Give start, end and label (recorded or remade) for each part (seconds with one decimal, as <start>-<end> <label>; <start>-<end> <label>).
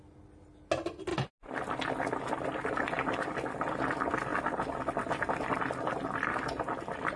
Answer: 0.0-7.2 recorded